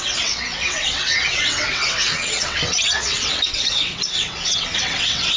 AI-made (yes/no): yes